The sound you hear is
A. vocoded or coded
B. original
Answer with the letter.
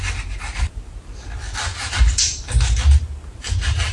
B